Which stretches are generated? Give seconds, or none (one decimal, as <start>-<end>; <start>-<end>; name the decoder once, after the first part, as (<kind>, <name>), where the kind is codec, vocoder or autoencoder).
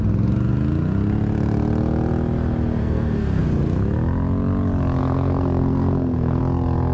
2.8-3.4 (codec, SNAC); 5.0-6.4